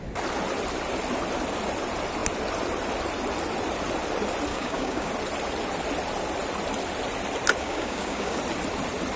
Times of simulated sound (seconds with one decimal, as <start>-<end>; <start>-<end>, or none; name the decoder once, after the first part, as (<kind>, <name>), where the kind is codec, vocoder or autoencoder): 4.5-5.1 (codec, DAC); 7.6-8.4